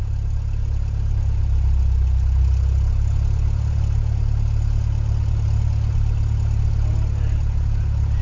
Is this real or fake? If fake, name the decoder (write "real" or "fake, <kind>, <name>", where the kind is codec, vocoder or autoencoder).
real